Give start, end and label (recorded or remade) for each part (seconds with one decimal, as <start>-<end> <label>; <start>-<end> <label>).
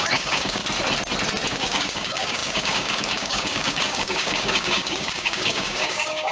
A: 0.0-0.6 remade; 0.6-1.5 recorded; 1.5-6.3 remade